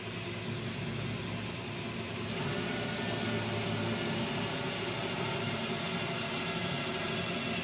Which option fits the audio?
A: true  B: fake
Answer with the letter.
A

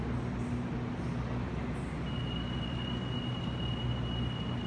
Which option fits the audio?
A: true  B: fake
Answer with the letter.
A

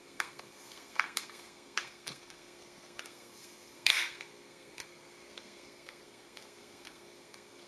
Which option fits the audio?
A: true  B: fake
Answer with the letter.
B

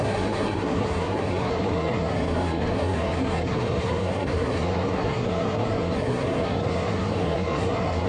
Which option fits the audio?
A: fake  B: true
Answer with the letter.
A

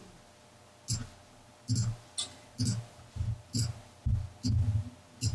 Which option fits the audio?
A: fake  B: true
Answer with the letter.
B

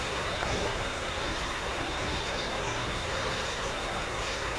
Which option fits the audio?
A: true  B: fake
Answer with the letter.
B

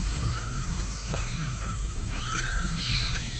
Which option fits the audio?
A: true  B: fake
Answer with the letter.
B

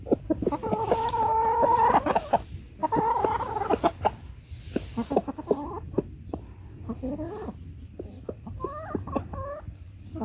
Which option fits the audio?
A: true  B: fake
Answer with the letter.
A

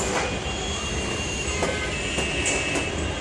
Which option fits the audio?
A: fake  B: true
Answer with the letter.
B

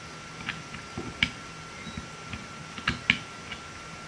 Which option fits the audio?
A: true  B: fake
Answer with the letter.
A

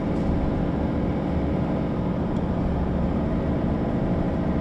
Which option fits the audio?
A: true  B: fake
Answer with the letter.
A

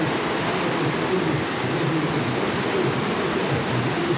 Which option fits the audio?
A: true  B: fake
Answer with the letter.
A